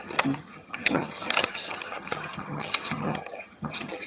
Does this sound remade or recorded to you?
remade